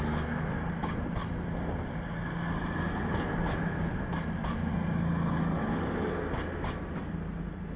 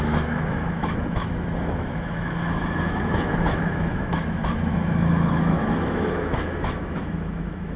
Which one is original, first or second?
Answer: first